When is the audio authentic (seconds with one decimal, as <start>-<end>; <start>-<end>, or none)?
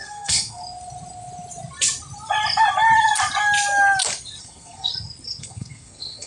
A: 0.6-4.4; 4.9-5.4